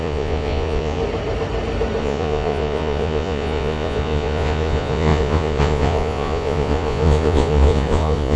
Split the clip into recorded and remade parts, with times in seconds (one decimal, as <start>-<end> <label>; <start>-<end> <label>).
0.0-1.0 remade; 1.0-2.0 recorded; 2.0-8.4 remade